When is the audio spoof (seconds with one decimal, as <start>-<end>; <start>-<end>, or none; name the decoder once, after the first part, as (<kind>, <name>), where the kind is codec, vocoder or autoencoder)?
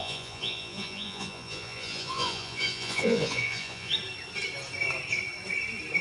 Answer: 0.0-3.9 (vocoder, Vocos)